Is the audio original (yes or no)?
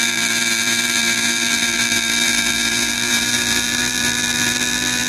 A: no